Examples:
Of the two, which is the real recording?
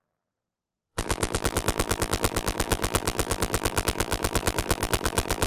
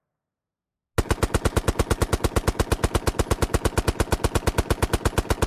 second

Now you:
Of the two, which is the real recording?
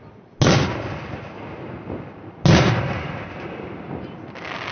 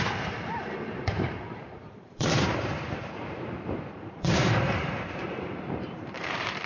first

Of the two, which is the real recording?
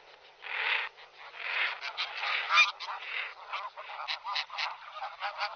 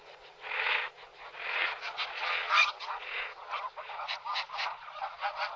first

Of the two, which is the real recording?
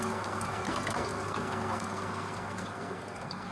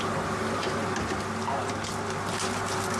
second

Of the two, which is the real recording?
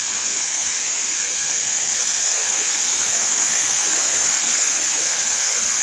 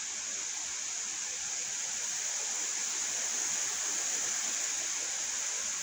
second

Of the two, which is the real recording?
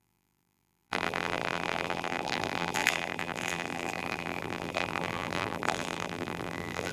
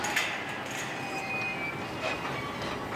second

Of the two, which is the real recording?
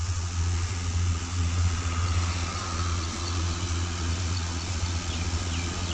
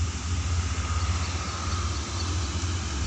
second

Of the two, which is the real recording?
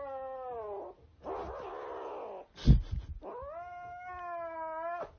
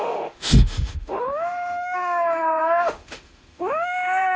first